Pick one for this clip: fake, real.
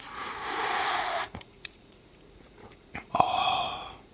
fake